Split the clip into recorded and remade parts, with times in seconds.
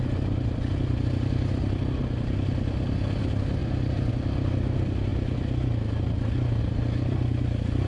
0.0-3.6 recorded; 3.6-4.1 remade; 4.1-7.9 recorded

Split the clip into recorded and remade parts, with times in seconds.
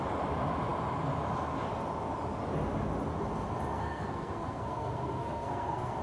0.0-3.7 recorded; 3.7-6.0 remade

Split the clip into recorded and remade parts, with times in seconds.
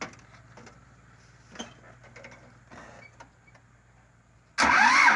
0.0-5.2 recorded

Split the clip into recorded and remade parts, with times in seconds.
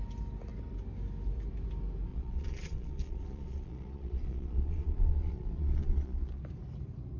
0.0-2.1 recorded; 2.1-6.4 remade; 6.4-7.2 recorded